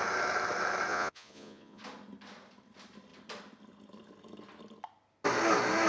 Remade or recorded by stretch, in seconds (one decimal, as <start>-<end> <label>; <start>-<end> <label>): 0.0-0.9 recorded; 0.9-1.8 remade; 1.8-5.9 recorded

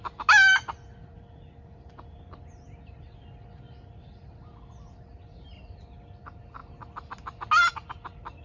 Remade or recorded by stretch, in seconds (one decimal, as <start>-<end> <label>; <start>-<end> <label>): 0.0-8.4 recorded